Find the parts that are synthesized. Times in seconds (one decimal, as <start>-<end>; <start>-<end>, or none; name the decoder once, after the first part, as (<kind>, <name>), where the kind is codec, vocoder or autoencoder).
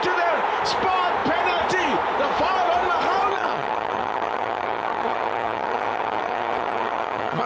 3.3-7.5 (vocoder, HiFi-GAN)